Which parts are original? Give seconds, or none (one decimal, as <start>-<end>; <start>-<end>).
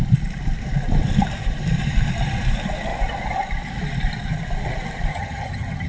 0.0-5.1